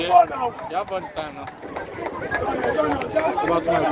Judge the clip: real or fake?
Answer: real